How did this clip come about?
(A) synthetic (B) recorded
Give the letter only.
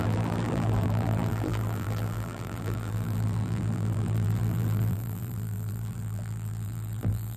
A